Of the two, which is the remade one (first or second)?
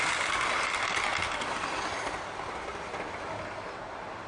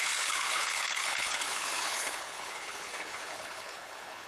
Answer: second